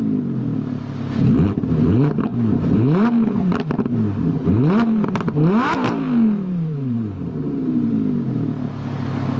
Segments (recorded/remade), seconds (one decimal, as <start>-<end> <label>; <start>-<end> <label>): 0.0-2.3 recorded; 2.3-7.3 remade; 7.3-9.4 recorded